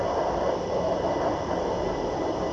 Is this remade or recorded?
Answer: recorded